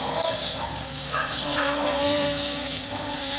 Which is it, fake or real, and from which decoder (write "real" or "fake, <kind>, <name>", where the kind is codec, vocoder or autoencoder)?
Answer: fake, codec, SNAC